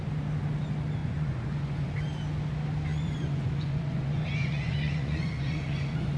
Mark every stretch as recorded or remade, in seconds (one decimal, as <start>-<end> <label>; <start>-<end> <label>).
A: 0.0-1.0 recorded; 1.0-1.9 remade; 1.9-2.9 recorded; 2.9-6.2 remade